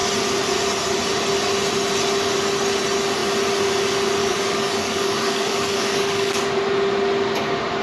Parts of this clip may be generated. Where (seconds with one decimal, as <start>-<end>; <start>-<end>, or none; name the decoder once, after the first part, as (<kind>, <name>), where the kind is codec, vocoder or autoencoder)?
4.2-6.3 (codec, DAC)